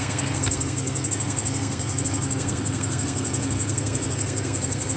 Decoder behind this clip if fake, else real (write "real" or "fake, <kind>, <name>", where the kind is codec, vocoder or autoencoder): fake, codec, SNAC